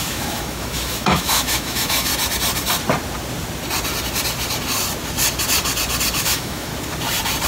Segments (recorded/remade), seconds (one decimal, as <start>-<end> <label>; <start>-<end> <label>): 0.0-2.1 remade; 2.1-6.2 recorded; 6.2-6.7 remade; 6.7-7.5 recorded